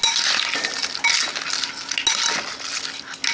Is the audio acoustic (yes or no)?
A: yes